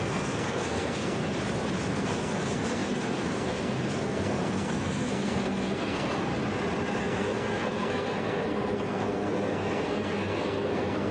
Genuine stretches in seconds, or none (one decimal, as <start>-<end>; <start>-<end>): 1.2-1.9; 6.3-7.0